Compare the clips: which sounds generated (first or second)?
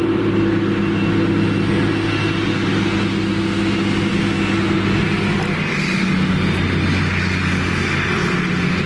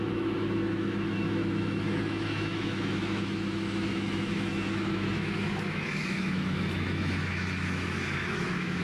second